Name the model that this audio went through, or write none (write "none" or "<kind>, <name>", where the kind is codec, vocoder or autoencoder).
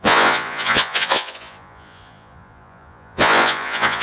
vocoder, Vocos